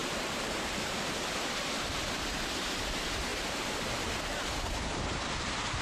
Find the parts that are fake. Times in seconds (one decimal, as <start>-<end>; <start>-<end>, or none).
none